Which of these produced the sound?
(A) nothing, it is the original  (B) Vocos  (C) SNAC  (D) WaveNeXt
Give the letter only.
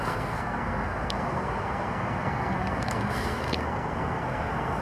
C